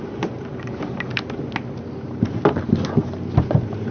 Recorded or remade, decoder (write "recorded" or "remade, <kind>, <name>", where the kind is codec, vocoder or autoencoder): recorded